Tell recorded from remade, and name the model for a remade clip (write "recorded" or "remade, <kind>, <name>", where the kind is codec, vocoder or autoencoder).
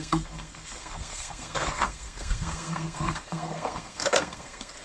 remade, codec, SNAC